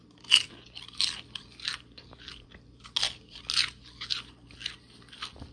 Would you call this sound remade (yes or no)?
no